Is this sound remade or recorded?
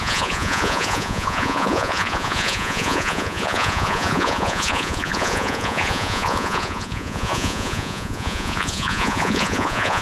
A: remade